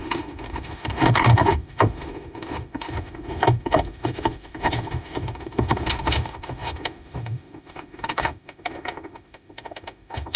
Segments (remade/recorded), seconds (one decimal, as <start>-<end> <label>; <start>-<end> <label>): 0.0-10.4 remade